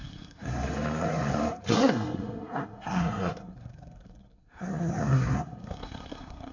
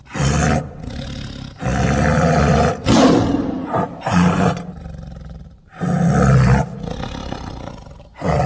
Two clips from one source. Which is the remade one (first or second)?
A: first